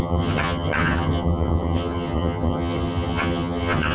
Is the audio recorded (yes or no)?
no